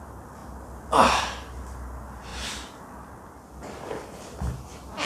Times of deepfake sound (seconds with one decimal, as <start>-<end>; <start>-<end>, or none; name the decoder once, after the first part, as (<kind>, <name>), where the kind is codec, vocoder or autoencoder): none